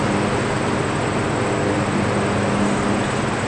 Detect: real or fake real